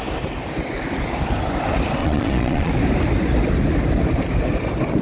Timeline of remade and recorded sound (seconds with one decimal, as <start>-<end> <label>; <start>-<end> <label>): 0.0-2.0 recorded; 2.0-2.7 remade; 2.7-5.0 recorded